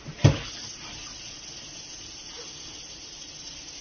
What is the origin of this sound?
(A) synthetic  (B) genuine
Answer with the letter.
B